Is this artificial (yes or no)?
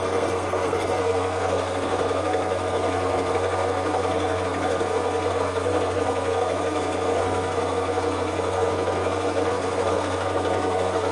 yes